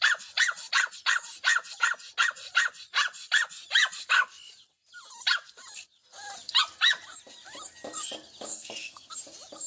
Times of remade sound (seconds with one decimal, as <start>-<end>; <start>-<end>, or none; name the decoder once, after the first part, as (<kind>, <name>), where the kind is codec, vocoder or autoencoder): 8.5-9.1 (codec, SNAC)